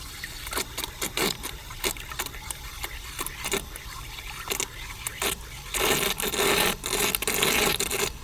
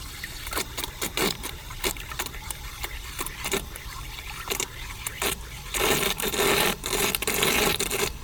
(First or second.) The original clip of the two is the first